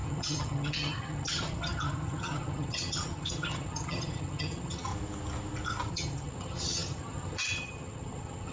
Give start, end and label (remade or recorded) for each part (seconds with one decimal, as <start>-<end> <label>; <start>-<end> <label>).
0.0-4.9 remade; 4.9-5.9 recorded; 5.9-8.5 remade